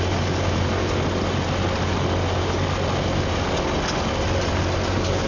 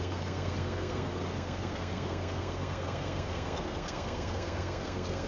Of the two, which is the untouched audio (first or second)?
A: first